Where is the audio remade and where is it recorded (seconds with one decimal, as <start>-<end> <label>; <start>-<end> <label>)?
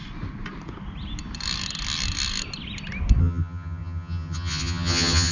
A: 0.0-3.2 recorded; 3.2-5.3 remade